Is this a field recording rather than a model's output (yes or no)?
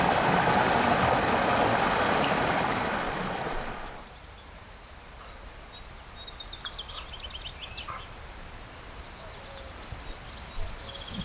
yes